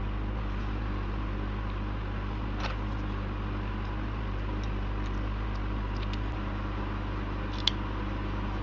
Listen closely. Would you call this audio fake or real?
real